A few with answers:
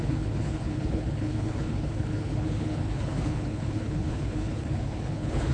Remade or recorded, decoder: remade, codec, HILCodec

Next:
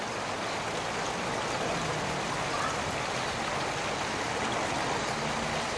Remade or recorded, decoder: recorded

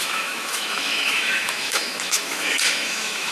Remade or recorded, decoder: remade, autoencoder, DAC-VAE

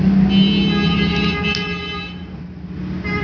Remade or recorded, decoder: recorded